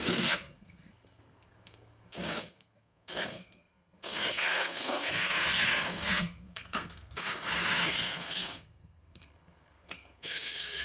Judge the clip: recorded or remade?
remade